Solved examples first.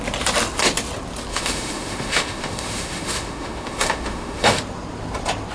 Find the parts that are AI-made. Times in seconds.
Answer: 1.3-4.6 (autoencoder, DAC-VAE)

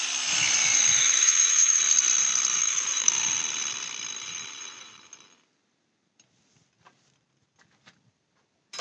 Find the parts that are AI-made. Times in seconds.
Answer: 1.0-1.8 (autoencoder, DAC-VAE); 2.6-3.1

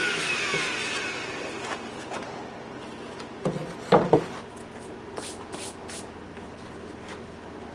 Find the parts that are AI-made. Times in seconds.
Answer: none

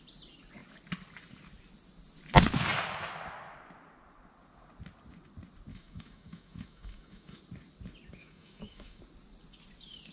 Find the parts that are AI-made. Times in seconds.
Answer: 5.7-7.4 (autoencoder, DAC-VAE); 8.2-9.0

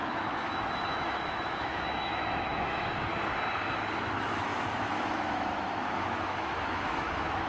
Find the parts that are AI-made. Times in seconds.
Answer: 0.0-3.1 (autoencoder, DAC-VAE); 3.9-7.5

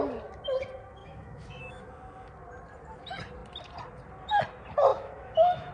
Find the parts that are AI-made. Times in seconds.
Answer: 1.0-1.9 (autoencoder, DAC-VAE); 4.9-5.7

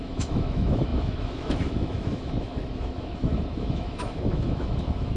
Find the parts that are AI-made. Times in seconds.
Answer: 0.0-5.2 (autoencoder, DAC-VAE)

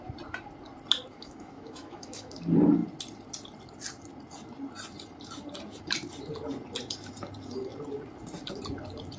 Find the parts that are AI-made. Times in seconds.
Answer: 1.1-2.3 (autoencoder, DAC-VAE)